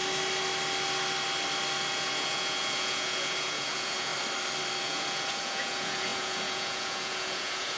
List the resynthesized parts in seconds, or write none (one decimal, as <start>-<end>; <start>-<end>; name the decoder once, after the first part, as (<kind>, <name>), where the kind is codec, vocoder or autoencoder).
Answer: 1.8-4.1 (vocoder, Vocos); 4.8-7.8